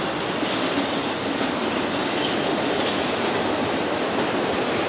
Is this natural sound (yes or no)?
no